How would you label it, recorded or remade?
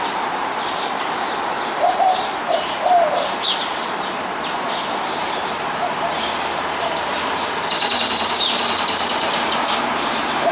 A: remade